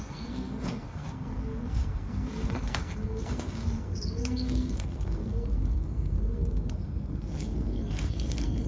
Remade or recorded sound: remade